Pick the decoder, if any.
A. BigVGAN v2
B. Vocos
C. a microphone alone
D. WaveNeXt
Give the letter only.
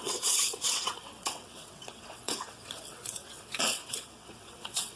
D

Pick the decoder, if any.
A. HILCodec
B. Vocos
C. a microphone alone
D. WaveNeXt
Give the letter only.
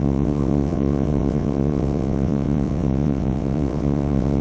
D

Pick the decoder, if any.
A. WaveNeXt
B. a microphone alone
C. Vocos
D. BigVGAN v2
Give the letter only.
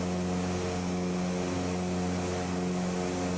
B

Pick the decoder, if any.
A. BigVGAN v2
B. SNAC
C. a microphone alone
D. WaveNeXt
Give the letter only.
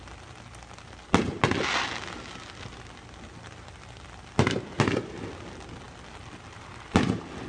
C